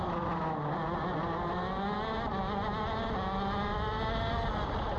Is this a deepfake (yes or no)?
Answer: no